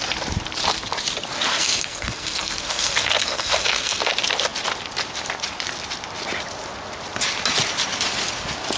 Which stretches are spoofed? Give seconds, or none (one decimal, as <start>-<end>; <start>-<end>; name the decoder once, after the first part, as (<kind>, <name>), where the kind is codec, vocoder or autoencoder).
1.5-4.1 (codec, SNAC)